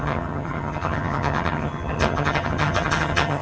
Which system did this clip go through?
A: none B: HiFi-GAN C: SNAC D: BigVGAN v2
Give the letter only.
B